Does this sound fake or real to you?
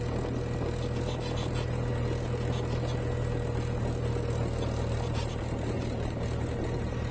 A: real